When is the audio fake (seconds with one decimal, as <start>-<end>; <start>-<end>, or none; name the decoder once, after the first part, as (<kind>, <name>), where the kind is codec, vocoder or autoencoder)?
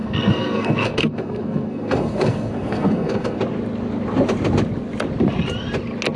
0.0-3.4 (codec, SNAC)